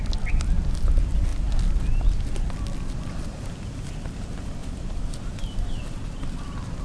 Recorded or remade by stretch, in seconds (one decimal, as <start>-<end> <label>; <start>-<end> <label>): 0.0-6.8 recorded